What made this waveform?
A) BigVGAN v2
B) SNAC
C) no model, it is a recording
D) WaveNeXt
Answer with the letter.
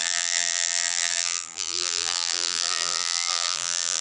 A